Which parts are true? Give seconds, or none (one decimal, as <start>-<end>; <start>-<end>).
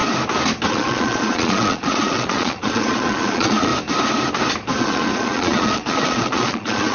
0.0-0.7; 3.7-4.8